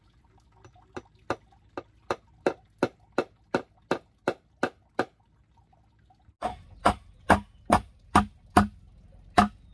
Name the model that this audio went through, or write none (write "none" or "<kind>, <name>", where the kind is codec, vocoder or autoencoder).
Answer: none